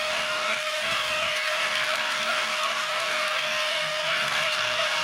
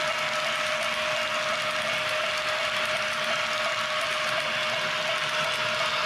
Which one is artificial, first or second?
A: first